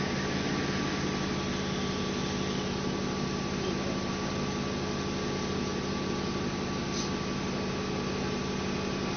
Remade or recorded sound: recorded